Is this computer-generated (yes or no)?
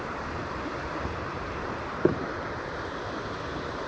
yes